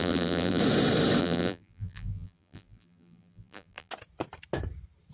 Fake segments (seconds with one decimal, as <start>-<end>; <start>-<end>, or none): 0.0-0.6; 1.2-3.9